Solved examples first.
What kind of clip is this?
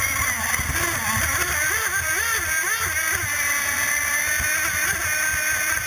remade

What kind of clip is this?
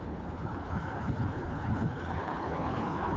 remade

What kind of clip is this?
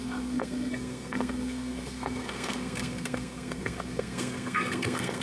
remade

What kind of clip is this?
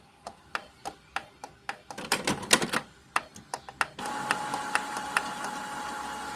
recorded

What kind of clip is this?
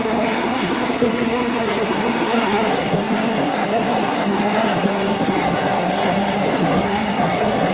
remade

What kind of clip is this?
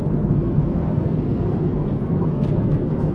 remade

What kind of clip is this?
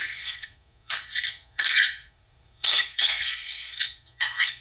remade